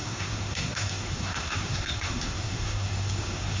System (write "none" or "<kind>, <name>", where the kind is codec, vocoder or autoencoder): codec, SNAC